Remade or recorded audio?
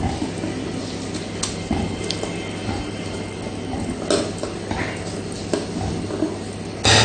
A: recorded